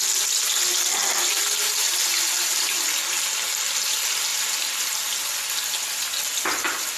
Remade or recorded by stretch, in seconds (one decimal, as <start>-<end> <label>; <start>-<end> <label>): 0.0-7.0 recorded